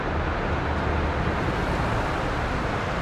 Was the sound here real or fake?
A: real